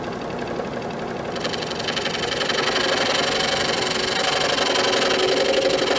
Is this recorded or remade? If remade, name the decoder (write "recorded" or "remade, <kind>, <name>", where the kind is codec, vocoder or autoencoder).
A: recorded